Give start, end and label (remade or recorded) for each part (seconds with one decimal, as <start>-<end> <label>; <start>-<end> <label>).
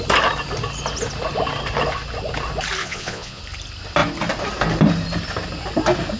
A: 0.0-2.8 recorded; 2.8-3.4 remade; 3.4-6.2 recorded